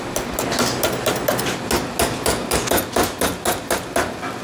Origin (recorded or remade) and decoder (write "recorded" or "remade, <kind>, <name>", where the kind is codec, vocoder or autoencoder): recorded